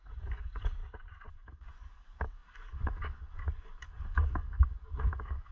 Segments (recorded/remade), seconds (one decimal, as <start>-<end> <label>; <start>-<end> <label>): 0.0-0.8 remade; 0.8-1.3 recorded; 1.3-5.5 remade